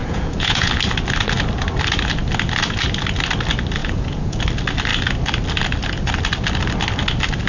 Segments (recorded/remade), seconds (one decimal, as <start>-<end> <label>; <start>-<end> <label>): 0.0-0.7 remade; 0.7-3.8 recorded; 3.8-4.4 remade; 4.4-7.5 recorded